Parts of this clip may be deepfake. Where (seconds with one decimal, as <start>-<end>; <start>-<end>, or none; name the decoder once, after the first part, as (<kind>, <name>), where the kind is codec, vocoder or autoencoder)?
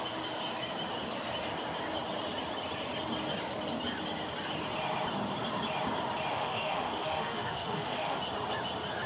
6.3-8.2 (autoencoder, DAC-VAE)